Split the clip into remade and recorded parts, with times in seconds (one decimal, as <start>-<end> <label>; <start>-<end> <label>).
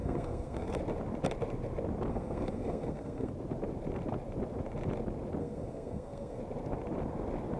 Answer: 0.0-0.8 remade; 0.8-2.1 recorded; 2.1-3.3 remade; 3.3-5.4 recorded; 5.4-6.4 remade; 6.4-7.6 recorded